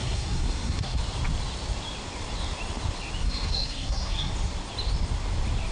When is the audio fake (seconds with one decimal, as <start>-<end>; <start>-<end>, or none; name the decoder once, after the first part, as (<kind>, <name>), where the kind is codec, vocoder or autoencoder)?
0.0-1.0 (codec, SNAC); 3.2-4.3